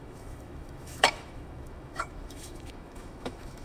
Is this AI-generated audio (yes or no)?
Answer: yes